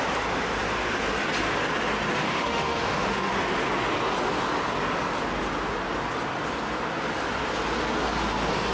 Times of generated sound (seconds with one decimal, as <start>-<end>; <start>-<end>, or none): 2.1-3.3